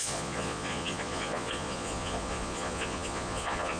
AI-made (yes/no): yes